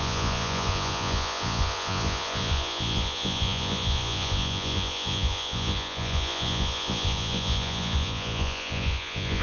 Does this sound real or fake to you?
fake